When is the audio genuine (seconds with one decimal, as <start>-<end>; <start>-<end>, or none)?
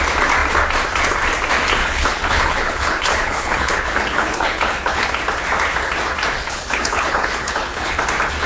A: 0.0-1.8; 5.2-6.4; 8.0-8.5